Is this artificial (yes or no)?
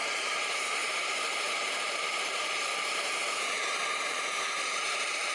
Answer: yes